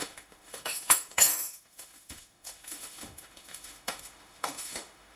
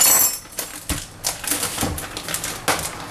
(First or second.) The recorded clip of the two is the second